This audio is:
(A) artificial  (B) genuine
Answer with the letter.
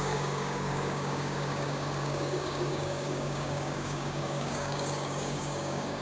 A